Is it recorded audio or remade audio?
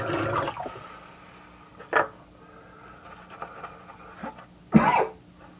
recorded